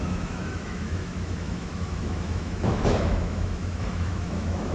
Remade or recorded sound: remade